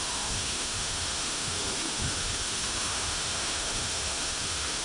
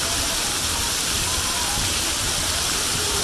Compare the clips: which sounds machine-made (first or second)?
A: first